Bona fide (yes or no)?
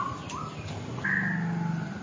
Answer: yes